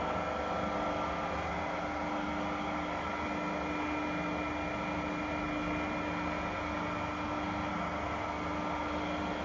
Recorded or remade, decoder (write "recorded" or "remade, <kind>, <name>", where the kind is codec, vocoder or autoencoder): recorded